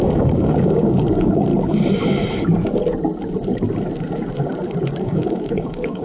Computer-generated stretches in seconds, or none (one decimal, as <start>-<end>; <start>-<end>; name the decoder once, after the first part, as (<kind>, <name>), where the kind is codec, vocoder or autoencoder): 0.0-1.5 (codec, DAC); 5.0-6.0